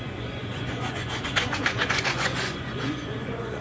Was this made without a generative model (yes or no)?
no